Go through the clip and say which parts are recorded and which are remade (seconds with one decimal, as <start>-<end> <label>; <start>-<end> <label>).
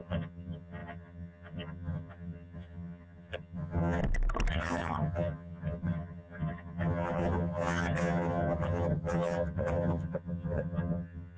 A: 0.0-4.0 remade; 4.0-4.5 recorded; 4.5-11.4 remade